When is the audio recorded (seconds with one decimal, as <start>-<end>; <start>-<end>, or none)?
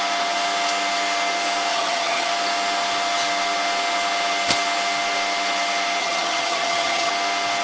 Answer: 0.0-1.7; 2.3-6.0; 7.1-7.6